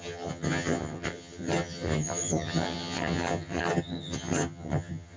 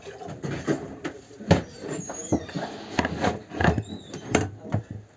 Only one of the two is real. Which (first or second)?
second